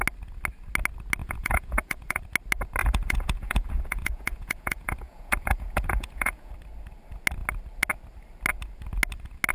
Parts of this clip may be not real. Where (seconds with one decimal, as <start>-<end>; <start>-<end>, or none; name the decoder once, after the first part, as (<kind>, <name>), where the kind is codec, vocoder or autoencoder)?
1.2-2.2 (vocoder, Vocos); 2.8-6.5